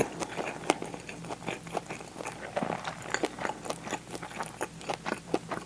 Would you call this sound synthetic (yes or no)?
no